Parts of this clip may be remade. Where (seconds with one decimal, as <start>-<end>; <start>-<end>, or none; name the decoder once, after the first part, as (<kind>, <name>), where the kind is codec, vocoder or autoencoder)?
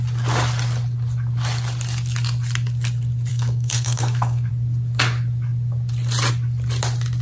3.3-4.5 (codec, SNAC)